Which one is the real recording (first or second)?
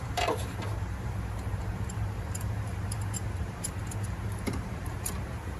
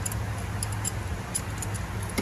second